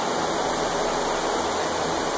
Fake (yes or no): no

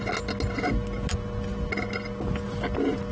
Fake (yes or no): no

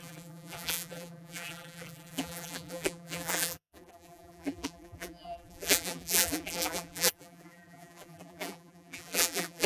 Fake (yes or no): yes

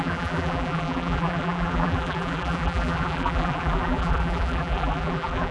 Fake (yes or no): yes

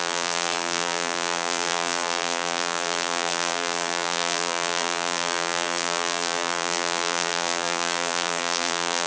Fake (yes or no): yes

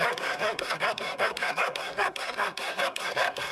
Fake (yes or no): yes